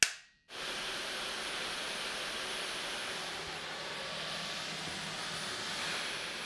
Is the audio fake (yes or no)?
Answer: no